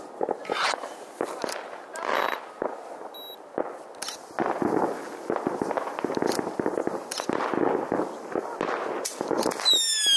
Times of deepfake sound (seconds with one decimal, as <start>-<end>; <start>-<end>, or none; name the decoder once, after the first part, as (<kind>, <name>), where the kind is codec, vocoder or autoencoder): none

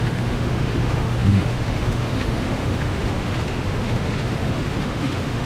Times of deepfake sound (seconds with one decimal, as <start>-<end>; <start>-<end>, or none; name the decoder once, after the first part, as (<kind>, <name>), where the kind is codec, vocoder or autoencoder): 0.0-5.5 (autoencoder, DAC-VAE)

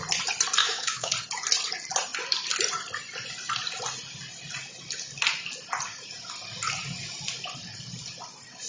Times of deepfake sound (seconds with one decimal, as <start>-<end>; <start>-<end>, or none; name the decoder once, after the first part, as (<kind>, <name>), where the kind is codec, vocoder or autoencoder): 0.6-1.1 (autoencoder, DAC-VAE)

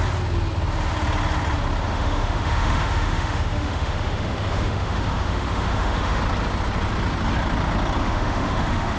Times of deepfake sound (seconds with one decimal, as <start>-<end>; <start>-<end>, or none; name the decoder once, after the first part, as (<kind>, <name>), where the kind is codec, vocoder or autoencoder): 1.9-6.2 (autoencoder, DAC-VAE); 8.0-9.0

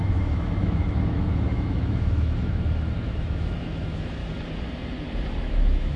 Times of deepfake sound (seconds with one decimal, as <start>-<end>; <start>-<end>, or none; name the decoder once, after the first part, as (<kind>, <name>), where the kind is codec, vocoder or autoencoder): 0.0-4.2 (autoencoder, DAC-VAE); 5.4-6.0

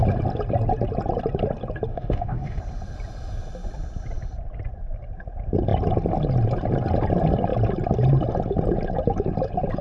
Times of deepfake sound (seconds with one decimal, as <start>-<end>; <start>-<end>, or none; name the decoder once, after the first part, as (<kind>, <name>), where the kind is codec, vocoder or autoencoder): 1.9-2.6 (autoencoder, DAC-VAE)